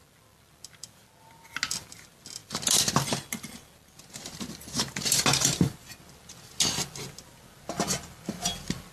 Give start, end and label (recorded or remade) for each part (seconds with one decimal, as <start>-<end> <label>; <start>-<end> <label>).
0.0-8.9 recorded